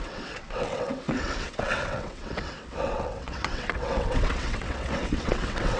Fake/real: fake